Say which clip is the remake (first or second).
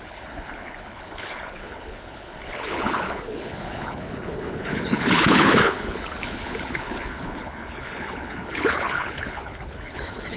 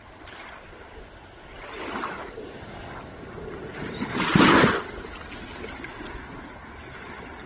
first